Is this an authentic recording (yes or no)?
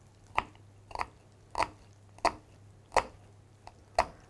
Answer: yes